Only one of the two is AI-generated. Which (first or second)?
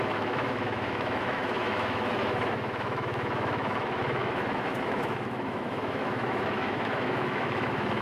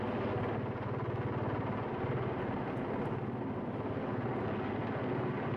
first